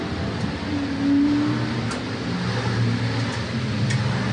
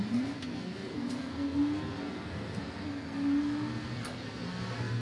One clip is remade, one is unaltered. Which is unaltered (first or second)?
first